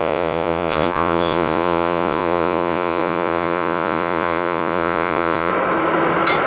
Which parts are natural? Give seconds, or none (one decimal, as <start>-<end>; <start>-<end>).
5.5-6.5

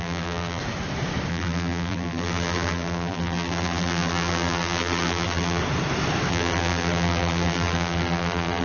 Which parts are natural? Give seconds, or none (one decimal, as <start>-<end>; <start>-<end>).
0.6-1.3; 5.6-6.3